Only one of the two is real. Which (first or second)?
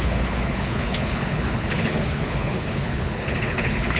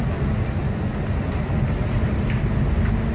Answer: second